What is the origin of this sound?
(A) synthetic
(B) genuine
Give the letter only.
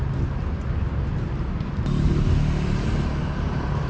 B